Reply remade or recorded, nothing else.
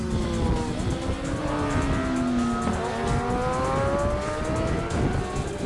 recorded